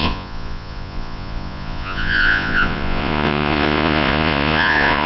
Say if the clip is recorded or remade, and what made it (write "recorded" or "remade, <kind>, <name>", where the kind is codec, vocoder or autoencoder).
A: remade, vocoder, Vocos